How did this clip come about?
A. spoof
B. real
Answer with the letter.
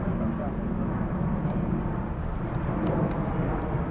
B